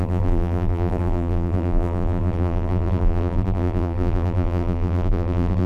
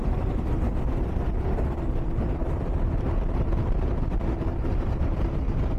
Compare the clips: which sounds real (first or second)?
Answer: second